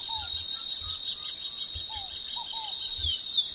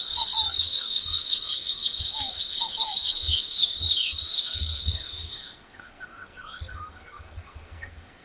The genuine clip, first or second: first